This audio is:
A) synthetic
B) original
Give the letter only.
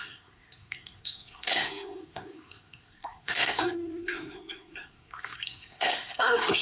A